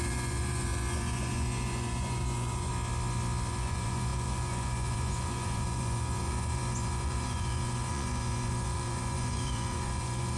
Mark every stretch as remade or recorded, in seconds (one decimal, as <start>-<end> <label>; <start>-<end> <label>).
0.0-2.7 remade; 2.7-3.5 recorded; 3.5-10.4 remade